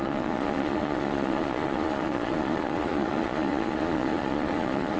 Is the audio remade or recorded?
remade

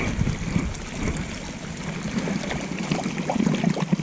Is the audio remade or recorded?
recorded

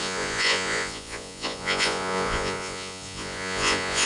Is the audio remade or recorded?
remade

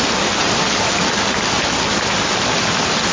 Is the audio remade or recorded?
recorded